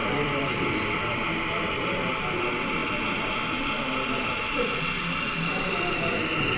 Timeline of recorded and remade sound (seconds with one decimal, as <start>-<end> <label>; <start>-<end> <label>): 0.0-2.0 remade; 2.0-2.8 recorded; 2.8-4.8 remade; 4.8-6.6 recorded